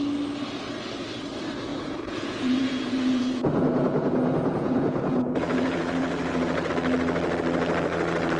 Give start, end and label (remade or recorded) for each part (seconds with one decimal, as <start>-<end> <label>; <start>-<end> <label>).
0.0-1.7 recorded; 1.7-6.7 remade; 6.7-8.4 recorded